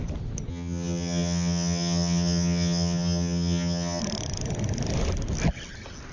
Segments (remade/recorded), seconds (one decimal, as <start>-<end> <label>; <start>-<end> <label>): 0.0-0.5 recorded; 0.5-4.0 remade; 4.0-6.1 recorded